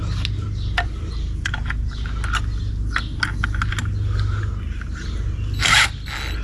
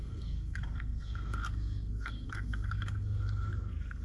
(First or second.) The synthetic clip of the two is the second